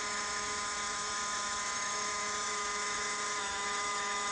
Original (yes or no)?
no